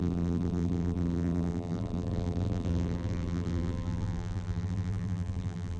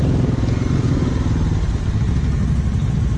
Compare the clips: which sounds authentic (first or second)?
second